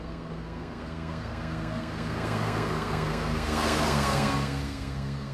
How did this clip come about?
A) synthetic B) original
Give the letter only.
A